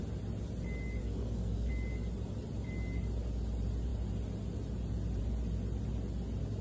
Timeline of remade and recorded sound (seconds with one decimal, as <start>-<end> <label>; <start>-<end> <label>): 0.0-1.0 recorded; 1.0-1.7 remade; 1.7-6.6 recorded